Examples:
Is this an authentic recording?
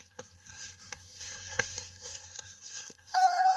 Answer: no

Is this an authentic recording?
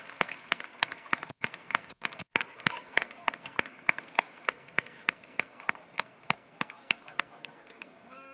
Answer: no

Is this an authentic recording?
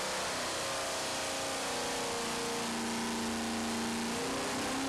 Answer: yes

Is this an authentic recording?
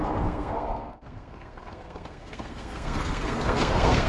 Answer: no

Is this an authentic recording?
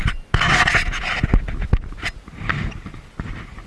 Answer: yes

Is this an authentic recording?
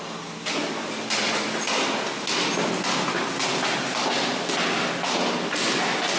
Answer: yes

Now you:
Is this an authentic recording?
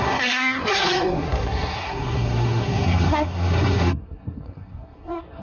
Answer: no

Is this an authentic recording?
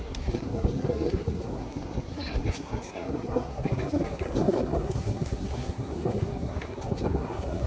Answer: no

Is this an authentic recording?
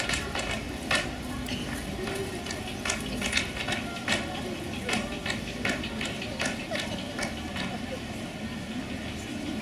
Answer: yes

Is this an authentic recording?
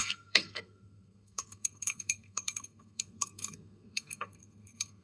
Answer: no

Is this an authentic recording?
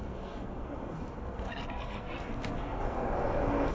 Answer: no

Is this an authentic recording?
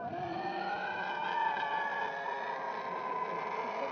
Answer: yes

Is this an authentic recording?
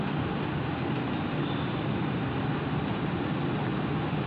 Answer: yes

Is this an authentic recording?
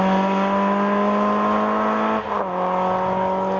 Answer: yes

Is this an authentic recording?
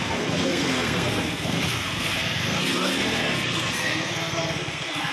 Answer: no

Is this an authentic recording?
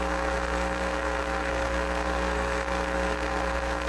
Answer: no